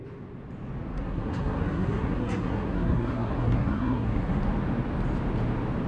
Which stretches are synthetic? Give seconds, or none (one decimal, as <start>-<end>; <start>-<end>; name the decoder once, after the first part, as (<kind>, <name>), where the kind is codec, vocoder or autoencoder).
0.9-4.4 (codec, SNAC)